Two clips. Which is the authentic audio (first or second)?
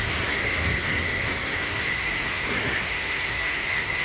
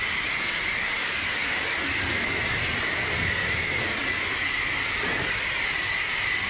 second